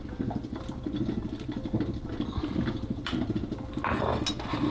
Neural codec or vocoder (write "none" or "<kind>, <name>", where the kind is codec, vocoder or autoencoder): none